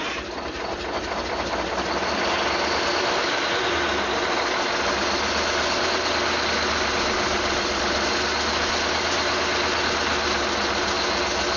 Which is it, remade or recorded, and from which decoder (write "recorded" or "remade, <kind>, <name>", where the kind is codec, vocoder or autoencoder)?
recorded